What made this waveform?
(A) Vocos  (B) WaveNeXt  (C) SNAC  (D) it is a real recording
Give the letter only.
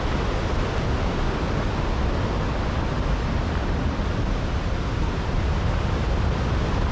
D